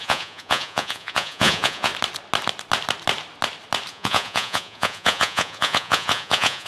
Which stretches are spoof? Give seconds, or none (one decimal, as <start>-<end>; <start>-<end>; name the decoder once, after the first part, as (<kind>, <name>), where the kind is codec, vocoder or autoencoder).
0.0-1.9 (vocoder, Vocos); 3.9-6.7

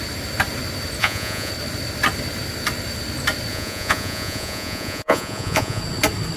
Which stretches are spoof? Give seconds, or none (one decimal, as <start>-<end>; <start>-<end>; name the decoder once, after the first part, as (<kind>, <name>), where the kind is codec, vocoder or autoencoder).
1.0-1.5 (vocoder, Vocos); 3.5-5.8

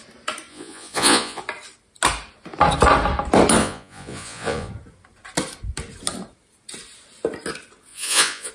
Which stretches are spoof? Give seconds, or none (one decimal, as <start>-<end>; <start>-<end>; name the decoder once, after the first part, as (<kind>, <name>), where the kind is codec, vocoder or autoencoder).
0.5-1.4 (vocoder, Vocos); 3.6-4.7; 7.9-8.5

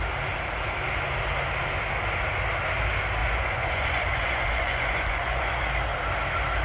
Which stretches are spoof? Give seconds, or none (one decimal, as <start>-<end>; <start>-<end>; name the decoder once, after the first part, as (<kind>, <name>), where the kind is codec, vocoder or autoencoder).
3.2-5.6 (vocoder, Vocos)

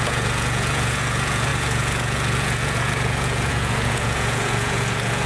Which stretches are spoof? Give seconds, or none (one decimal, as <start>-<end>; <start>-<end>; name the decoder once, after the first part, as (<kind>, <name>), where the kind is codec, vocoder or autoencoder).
0.0-5.3 (vocoder, Vocos)

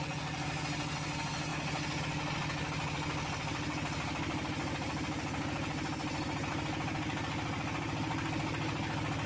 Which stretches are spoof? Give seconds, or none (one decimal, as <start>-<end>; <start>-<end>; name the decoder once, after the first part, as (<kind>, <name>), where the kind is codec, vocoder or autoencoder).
none